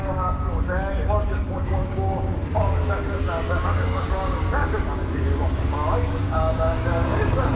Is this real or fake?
fake